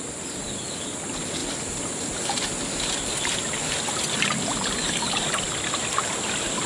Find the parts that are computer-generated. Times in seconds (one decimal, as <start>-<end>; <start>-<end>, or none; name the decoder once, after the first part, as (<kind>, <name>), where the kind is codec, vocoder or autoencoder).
none